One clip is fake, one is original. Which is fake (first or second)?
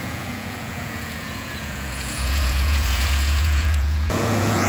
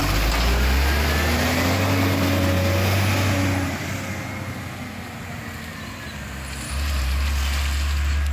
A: first